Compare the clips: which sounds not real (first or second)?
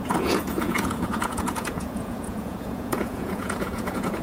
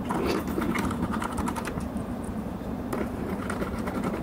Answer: first